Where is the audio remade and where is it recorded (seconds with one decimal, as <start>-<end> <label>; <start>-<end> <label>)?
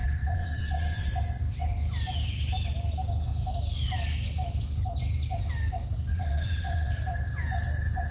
0.0-1.1 remade; 1.1-6.1 recorded; 6.1-6.9 remade; 6.9-8.1 recorded